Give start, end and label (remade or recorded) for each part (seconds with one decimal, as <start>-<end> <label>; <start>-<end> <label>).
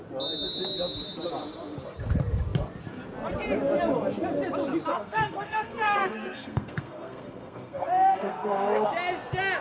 0.0-4.9 recorded; 4.9-8.9 remade; 8.9-9.6 recorded